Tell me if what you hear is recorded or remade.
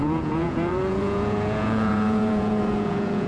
remade